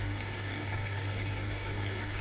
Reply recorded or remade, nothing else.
remade